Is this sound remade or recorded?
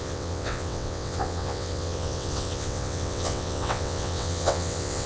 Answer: remade